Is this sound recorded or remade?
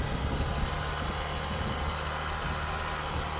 recorded